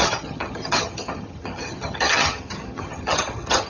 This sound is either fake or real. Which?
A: fake